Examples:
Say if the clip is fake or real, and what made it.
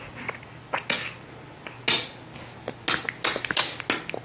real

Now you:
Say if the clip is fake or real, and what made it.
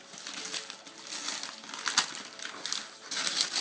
real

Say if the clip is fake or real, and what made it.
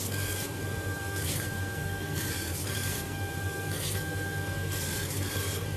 fake, codec, SNAC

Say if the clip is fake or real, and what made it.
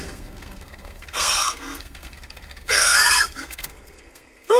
fake, codec, SNAC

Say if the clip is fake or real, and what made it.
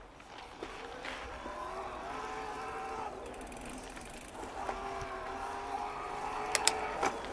real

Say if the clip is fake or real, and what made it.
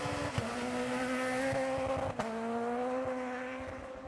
real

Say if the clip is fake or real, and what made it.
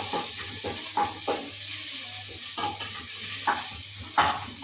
real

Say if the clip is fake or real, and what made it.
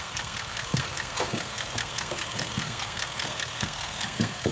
fake, codec, SNAC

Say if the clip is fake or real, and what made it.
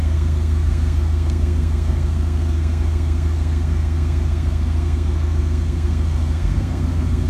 fake, codec, SNAC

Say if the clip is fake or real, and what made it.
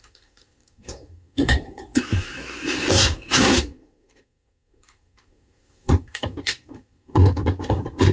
fake, codec, SNAC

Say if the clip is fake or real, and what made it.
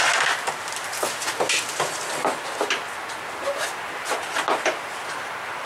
real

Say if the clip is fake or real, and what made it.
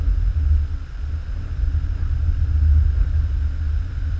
real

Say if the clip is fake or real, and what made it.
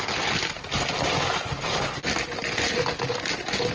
real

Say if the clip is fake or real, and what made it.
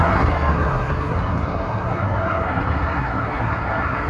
fake, codec, SNAC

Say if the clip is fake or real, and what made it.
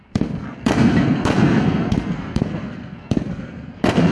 fake, codec, SNAC